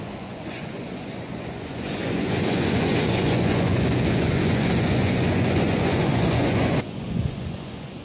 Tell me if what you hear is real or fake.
fake